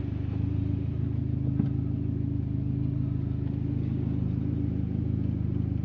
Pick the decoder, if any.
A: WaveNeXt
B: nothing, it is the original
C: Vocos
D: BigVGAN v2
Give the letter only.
B